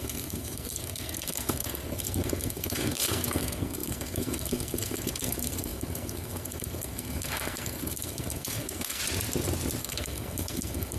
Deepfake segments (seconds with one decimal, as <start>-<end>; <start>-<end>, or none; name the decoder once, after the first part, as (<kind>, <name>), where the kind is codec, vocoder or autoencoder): 0.0-9.0 (codec, SNAC); 9.8-11.0